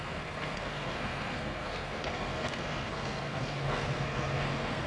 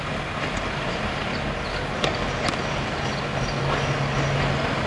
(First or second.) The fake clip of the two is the first